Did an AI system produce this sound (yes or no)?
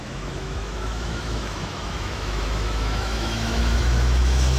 yes